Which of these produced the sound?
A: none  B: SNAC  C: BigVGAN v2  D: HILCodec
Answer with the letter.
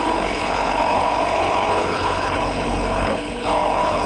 D